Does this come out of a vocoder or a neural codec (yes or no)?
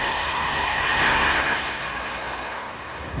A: yes